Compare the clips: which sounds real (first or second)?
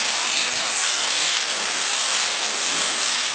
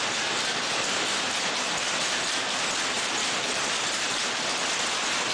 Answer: second